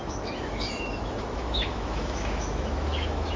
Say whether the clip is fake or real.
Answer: fake